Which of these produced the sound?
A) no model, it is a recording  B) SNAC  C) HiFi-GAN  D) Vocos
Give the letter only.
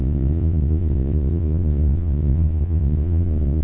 D